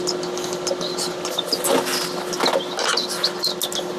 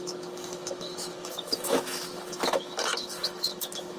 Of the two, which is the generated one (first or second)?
second